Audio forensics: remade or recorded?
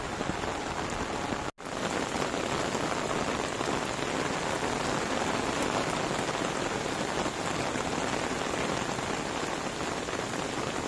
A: recorded